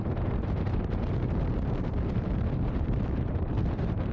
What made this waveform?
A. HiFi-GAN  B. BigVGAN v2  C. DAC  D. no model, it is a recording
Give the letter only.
B